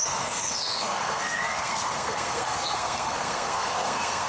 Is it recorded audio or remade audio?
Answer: remade